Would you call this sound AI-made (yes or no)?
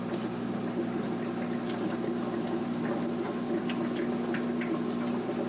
no